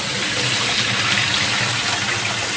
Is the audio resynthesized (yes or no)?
no